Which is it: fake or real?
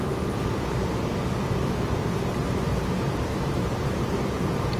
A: fake